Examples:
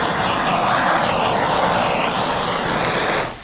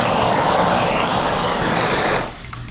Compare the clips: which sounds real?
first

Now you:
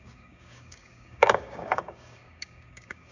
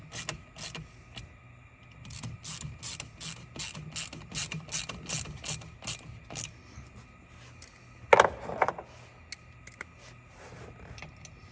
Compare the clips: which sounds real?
second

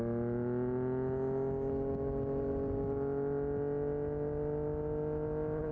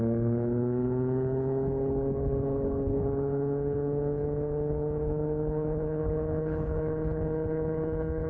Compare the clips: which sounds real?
first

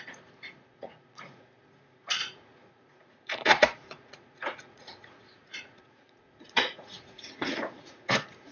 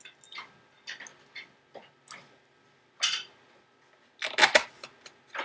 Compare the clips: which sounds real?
second